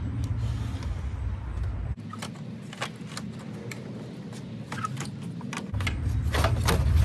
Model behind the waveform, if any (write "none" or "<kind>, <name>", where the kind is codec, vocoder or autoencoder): none